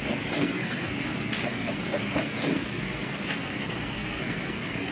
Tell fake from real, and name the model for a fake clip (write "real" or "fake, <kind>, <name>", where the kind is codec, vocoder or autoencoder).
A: fake, codec, SNAC